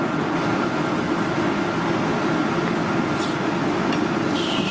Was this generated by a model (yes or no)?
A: no